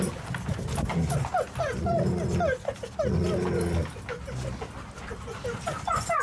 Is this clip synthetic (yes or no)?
no